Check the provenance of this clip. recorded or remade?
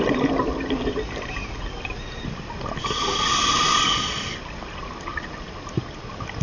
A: recorded